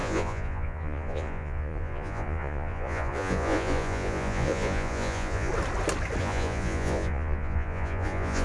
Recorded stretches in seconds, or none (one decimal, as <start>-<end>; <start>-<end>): 5.5-6.2